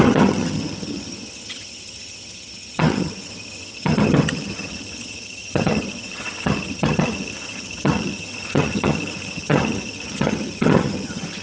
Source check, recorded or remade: remade